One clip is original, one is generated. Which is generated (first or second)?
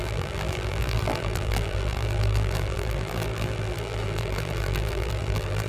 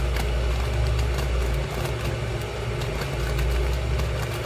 first